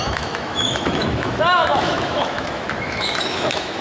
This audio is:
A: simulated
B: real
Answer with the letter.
A